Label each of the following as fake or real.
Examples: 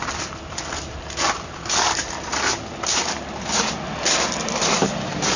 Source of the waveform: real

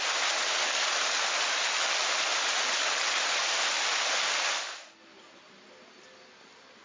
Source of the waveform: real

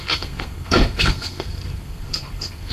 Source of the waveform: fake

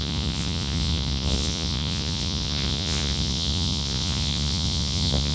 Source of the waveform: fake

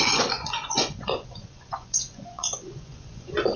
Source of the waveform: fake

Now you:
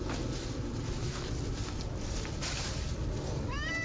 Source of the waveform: real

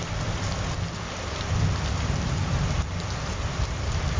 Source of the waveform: real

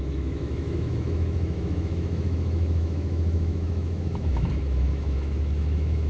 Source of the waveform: fake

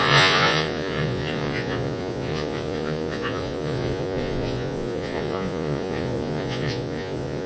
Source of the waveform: fake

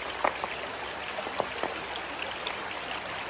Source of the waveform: real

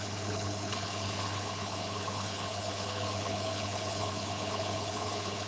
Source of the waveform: fake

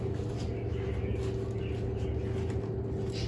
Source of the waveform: real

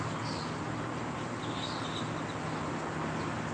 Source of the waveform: real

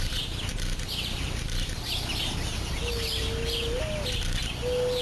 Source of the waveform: real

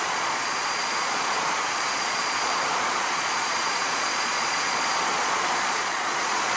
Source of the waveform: fake